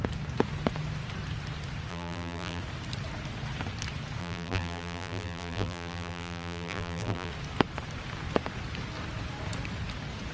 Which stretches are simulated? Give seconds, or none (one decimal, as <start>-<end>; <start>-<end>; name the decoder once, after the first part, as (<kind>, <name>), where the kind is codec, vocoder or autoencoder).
1.9-2.6 (vocoder, BigVGAN v2); 4.2-7.3